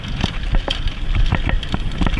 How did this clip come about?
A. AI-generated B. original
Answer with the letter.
B